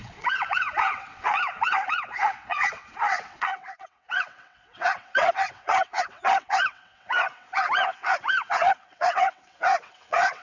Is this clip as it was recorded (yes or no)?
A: no